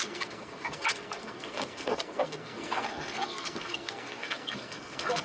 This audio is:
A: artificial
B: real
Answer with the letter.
A